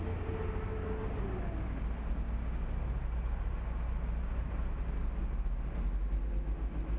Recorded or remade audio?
recorded